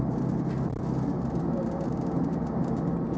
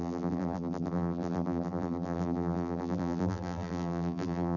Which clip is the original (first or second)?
first